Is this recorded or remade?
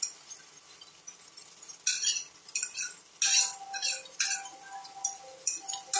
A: recorded